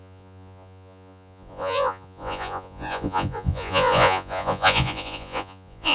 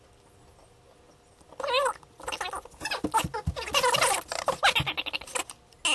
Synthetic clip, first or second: first